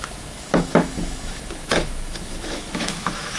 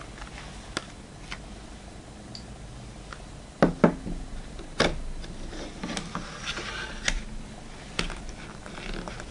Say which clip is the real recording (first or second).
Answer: second